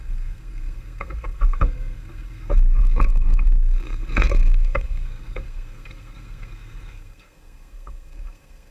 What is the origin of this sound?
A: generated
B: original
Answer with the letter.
A